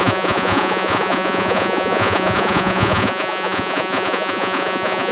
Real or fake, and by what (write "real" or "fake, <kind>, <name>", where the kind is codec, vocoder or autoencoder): fake, vocoder, Vocos